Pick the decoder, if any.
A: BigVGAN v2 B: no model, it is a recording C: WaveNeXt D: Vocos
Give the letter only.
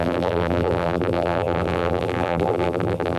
A